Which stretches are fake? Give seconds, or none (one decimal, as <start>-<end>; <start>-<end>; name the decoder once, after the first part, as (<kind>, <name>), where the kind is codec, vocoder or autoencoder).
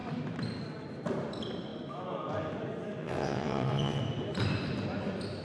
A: 3.0-4.0 (vocoder, WaveNeXt)